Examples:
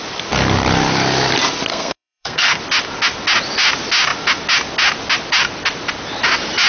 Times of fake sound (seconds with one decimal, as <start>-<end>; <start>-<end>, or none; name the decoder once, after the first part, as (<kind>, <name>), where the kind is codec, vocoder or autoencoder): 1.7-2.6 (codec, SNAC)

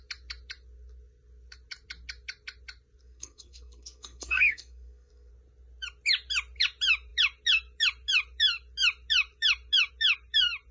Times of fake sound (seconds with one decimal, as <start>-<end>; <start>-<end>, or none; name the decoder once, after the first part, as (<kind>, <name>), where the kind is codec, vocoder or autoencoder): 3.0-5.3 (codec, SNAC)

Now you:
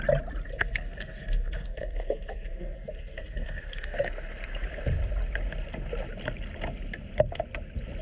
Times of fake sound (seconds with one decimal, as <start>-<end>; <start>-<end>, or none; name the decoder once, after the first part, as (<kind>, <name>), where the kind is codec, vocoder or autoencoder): 0.5-4.1 (codec, SNAC)